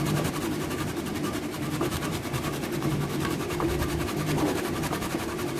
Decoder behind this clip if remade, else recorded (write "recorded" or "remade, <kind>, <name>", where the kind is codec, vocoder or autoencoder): remade, vocoder, BigVGAN v2